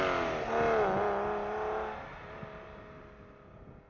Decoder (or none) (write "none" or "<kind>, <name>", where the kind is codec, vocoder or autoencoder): none